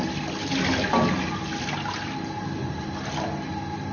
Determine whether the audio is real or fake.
real